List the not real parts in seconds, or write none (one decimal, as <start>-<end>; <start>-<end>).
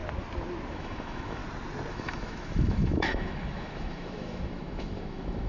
0.7-1.4; 1.9-5.5